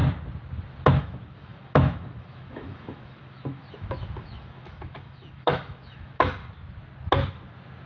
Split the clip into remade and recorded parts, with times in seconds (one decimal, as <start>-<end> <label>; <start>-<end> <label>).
0.0-1.0 recorded; 1.0-6.4 remade; 6.4-7.9 recorded